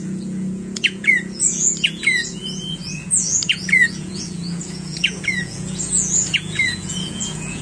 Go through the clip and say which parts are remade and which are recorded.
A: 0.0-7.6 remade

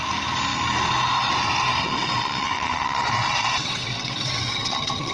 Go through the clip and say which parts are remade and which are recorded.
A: 0.0-1.8 recorded; 1.8-5.1 remade

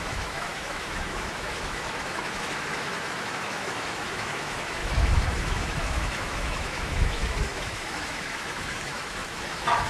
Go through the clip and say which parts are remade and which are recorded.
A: 0.0-9.9 remade

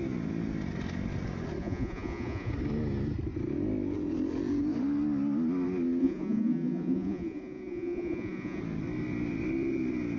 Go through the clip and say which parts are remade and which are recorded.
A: 0.0-1.6 recorded; 1.6-2.5 remade; 2.5-6.0 recorded; 6.0-8.6 remade; 8.6-10.2 recorded

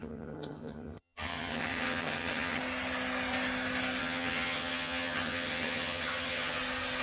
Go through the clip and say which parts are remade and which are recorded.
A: 0.0-2.6 remade; 2.6-4.0 recorded; 4.0-6.6 remade; 6.6-7.0 recorded

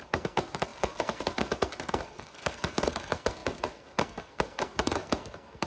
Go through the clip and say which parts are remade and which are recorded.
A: 0.0-5.7 remade